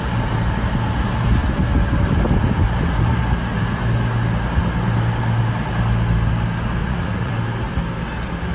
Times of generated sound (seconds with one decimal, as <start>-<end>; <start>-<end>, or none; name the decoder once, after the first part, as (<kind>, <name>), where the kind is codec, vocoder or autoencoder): 6.8-7.3 (vocoder, Vocos)